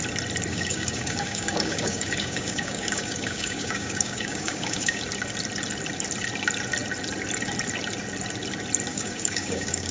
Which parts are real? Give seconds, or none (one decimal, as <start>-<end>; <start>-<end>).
0.0-0.5; 5.0-8.9